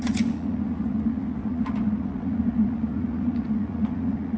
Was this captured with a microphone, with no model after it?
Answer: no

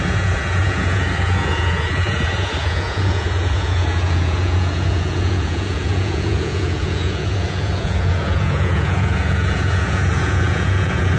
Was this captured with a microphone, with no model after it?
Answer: no